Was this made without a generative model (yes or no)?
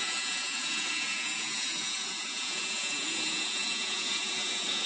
no